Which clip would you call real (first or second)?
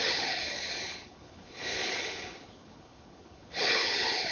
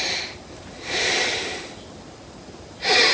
second